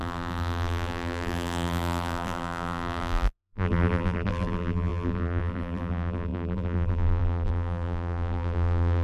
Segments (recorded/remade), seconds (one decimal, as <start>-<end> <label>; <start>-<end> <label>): 0.0-9.0 remade